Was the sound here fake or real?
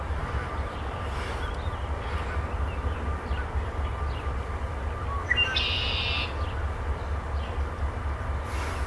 real